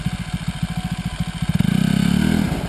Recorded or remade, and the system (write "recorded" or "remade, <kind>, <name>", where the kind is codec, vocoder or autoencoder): recorded